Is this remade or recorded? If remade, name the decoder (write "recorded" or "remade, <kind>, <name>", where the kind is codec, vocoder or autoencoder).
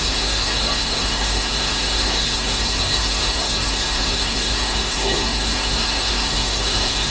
remade, codec, SNAC